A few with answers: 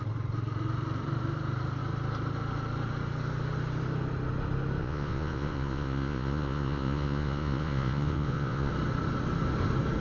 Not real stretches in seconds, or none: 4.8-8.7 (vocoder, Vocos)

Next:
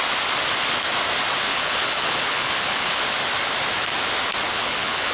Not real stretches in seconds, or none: 1.5-3.0 (codec, HILCodec); 4.5-5.1

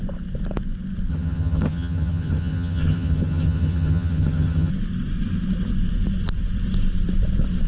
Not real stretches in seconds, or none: 1.1-4.7 (vocoder, HiFi-GAN)

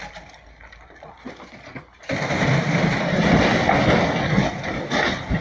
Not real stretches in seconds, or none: 1.7-4.9 (vocoder, BigVGAN v2)

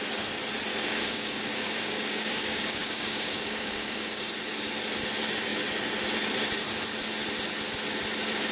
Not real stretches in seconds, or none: 0.7-4.3 (codec, DAC)